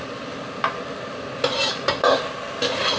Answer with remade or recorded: recorded